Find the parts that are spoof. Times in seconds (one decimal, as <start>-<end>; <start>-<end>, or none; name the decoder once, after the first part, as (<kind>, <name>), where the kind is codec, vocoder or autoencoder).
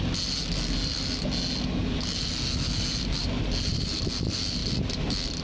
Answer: none